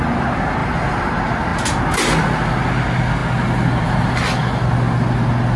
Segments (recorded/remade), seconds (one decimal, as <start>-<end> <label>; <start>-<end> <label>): 0.0-0.6 recorded; 0.6-1.1 remade; 1.1-5.6 recorded